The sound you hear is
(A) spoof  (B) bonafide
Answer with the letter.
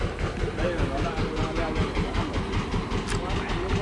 B